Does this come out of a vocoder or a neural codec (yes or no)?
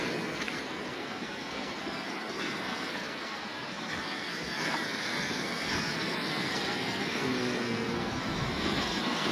yes